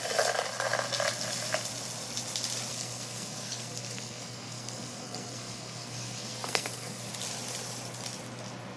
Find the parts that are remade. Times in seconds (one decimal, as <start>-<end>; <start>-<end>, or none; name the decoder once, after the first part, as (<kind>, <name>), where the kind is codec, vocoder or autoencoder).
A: 2.7-7.1 (codec, SNAC)